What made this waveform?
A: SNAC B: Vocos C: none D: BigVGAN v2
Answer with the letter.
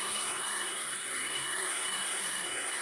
A